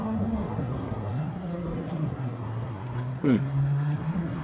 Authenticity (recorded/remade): remade